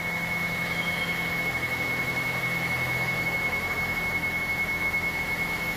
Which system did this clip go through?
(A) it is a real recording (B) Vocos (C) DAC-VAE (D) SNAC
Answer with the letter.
C